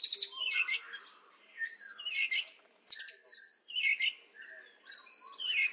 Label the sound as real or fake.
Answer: real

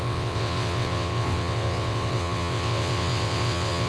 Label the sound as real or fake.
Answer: fake